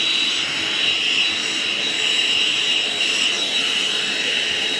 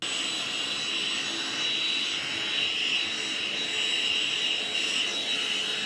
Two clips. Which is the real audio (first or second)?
second